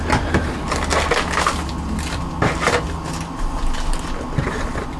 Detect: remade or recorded recorded